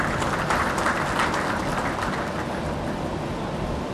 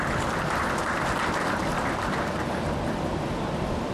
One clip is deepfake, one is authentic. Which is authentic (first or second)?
first